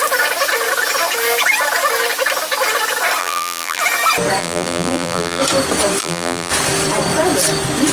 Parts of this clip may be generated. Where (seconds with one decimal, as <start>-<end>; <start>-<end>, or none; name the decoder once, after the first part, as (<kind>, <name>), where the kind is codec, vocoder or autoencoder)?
3.2-3.8 (vocoder, BigVGAN v2); 4.4-5.4; 6.0-6.5